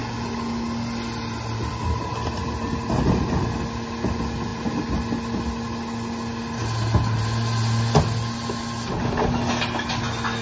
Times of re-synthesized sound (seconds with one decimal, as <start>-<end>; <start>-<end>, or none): none